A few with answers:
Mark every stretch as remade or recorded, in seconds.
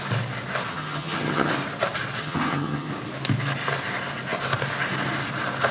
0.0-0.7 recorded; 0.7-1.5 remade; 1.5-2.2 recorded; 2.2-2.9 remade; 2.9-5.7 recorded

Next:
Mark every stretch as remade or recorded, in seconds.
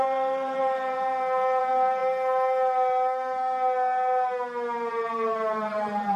0.0-2.0 remade; 2.0-4.9 recorded; 4.9-6.2 remade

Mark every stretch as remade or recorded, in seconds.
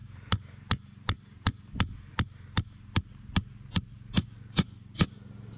0.0-1.6 remade; 1.6-5.6 recorded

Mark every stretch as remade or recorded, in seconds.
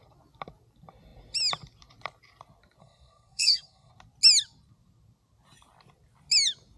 0.0-2.8 recorded; 2.8-3.9 remade; 3.9-6.8 recorded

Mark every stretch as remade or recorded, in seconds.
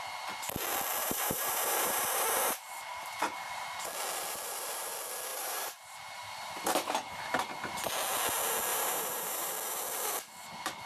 0.0-1.0 recorded; 1.0-3.9 remade; 3.9-5.3 recorded; 5.3-7.9 remade; 7.9-8.7 recorded; 8.7-9.5 remade; 9.5-10.9 recorded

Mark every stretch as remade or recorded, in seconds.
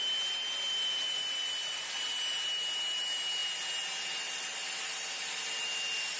0.0-6.2 recorded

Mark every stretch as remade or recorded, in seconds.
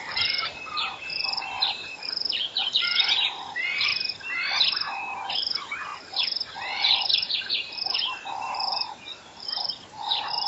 0.0-3.9 remade; 3.9-5.3 recorded; 5.3-10.5 remade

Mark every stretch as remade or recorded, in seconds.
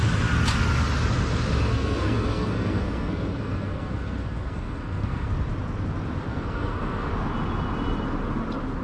0.0-1.7 recorded; 1.7-5.3 remade; 5.3-6.3 recorded; 6.3-7.1 remade; 7.1-8.8 recorded